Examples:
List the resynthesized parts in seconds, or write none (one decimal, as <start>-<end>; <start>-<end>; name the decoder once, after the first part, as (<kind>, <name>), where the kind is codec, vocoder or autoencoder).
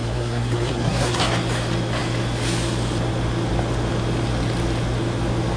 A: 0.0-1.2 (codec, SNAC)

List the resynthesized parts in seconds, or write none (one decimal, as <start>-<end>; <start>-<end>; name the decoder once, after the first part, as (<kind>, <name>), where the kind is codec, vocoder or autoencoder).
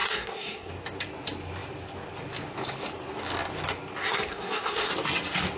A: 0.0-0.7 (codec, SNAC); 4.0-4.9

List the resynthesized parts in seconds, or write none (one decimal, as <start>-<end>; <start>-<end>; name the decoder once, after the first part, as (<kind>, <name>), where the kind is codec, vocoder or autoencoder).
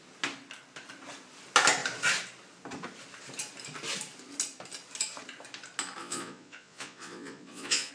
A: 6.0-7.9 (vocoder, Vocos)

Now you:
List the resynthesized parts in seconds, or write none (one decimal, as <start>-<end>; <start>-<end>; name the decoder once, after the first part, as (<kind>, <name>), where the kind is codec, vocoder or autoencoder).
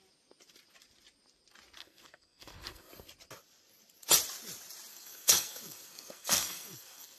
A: 1.8-2.9 (codec, SNAC); 4.9-7.2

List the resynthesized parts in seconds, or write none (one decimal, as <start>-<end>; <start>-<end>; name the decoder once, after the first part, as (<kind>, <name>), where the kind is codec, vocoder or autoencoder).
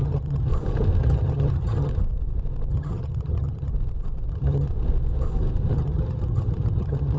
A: 0.0-0.5 (vocoder, HiFi-GAN); 1.0-1.9; 2.7-3.7; 4.3-4.7; 5.7-7.2